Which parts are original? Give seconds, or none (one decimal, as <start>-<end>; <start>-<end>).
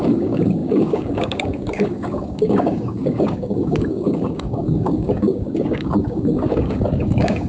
none